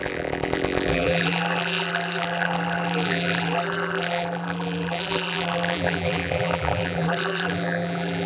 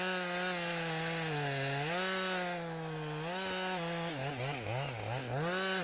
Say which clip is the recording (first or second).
second